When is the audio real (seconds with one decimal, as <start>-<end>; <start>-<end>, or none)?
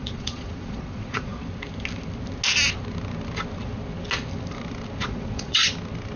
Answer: 1.3-5.0; 5.6-6.2